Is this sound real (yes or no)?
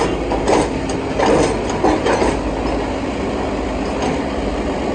yes